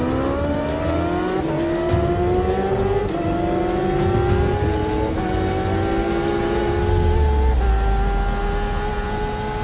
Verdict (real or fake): real